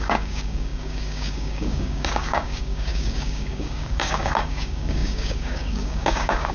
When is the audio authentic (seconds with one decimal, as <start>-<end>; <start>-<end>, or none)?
none